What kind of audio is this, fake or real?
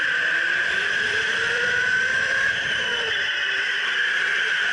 fake